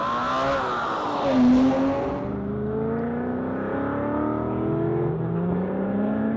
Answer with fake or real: real